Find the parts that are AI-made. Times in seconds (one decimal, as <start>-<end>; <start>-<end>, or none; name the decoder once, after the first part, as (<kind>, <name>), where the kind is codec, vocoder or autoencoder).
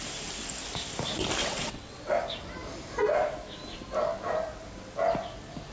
1.4-2.1 (vocoder, WaveNeXt)